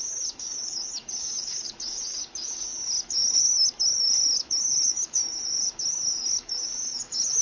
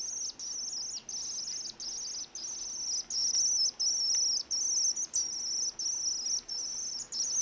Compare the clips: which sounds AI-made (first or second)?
first